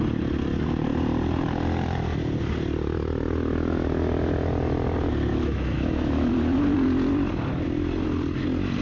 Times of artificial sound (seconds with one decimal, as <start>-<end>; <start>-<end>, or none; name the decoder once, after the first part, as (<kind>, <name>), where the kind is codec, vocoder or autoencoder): 5.3-6.3 (autoencoder, DAC-VAE)